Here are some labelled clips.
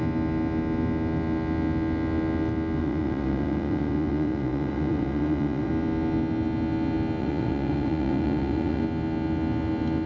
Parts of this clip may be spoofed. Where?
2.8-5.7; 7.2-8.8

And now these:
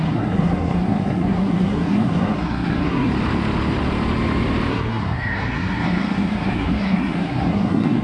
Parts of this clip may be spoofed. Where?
0.0-3.1; 4.7-8.0

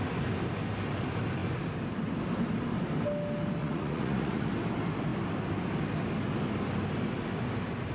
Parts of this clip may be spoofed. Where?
3.6-4.5

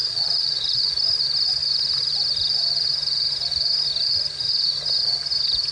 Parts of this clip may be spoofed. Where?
0.0-0.8

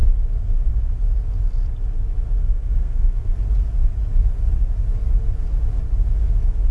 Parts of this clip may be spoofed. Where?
2.4-3.3